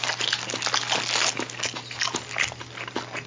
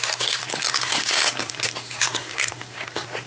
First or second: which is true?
first